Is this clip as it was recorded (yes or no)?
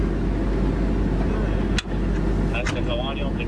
yes